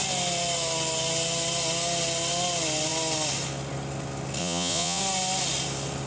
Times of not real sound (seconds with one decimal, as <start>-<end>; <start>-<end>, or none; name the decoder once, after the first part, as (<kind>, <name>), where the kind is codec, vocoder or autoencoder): 4.4-5.0 (vocoder, Vocos)